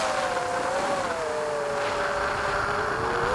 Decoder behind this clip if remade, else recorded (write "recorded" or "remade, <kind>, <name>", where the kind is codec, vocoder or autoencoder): recorded